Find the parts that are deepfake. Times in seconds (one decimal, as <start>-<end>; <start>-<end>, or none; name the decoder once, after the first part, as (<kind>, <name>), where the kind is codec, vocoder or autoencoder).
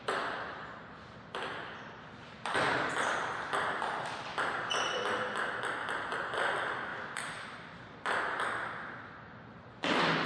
none